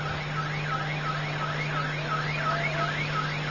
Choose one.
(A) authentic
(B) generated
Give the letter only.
A